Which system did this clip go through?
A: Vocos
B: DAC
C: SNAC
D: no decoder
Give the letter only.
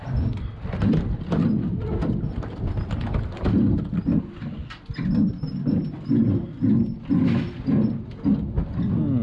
D